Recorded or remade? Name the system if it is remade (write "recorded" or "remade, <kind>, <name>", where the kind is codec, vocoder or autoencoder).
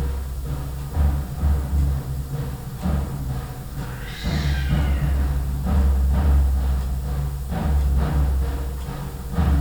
recorded